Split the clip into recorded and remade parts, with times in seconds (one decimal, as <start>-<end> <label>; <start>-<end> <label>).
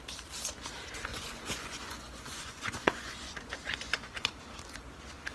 0.0-1.1 recorded; 1.1-4.3 remade; 4.3-5.3 recorded